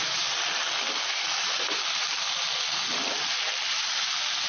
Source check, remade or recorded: recorded